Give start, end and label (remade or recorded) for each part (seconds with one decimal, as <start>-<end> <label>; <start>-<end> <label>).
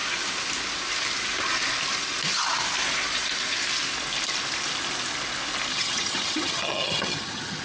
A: 0.0-5.7 recorded; 5.7-7.6 remade